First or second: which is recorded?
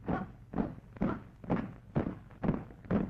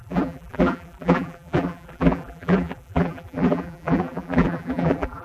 first